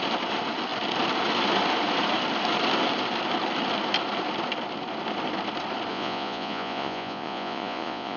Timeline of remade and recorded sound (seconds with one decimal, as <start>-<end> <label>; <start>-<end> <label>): 0.0-5.9 recorded; 5.9-8.2 remade